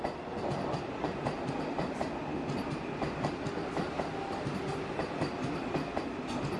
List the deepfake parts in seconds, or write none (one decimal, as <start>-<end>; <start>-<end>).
none